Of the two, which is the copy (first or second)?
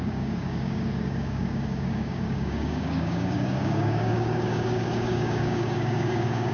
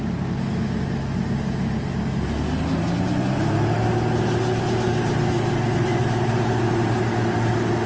first